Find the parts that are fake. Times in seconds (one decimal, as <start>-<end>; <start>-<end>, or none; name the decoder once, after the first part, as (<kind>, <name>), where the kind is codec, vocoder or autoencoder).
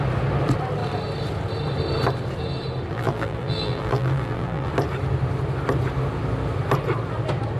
2.9-4.7 (vocoder, BigVGAN v2)